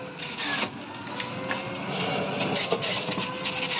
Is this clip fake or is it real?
real